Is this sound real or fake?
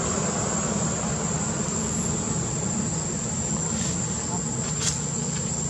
fake